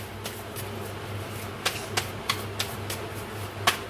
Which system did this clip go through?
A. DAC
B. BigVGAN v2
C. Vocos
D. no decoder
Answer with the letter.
D